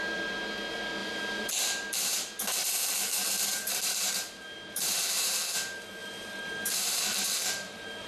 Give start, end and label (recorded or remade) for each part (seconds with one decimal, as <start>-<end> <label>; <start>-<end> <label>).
0.0-1.0 recorded; 1.0-5.4 remade; 5.4-6.0 recorded; 6.0-8.1 remade